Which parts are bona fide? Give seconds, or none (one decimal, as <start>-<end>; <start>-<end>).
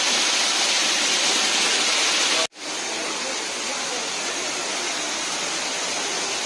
0.0-6.5